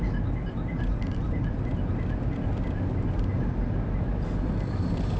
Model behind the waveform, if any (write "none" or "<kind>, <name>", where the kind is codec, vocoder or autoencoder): none